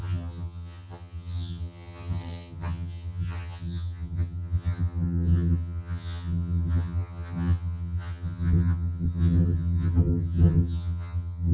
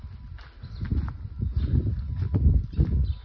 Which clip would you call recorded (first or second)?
second